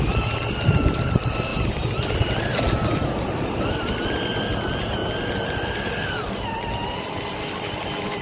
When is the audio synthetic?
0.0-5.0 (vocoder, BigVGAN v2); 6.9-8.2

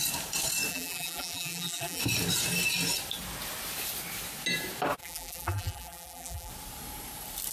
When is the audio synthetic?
0.7-2.0 (vocoder, BigVGAN v2); 5.0-6.5

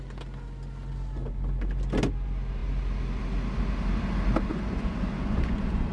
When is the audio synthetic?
4.5-5.9 (vocoder, Vocos)

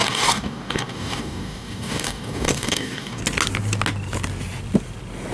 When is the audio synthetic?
0.0-3.2 (codec, DAC)

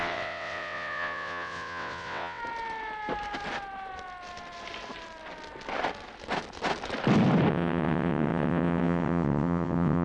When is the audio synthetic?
0.0-2.4 (vocoder, WaveNeXt); 7.5-10.0

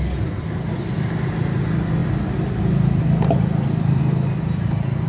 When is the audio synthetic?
none

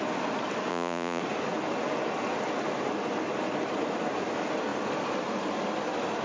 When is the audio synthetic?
0.7-1.2 (vocoder, Vocos)

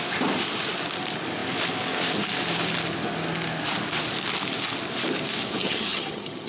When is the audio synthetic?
5.6-6.5 (vocoder, HiFi-GAN)